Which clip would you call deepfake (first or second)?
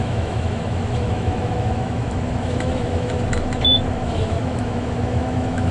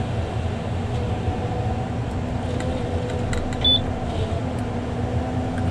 first